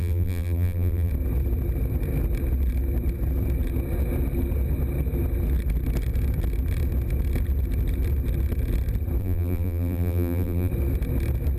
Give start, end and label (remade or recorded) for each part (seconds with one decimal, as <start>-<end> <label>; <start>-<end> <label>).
0.0-1.1 remade; 1.1-9.2 recorded; 9.2-10.7 remade; 10.7-11.6 recorded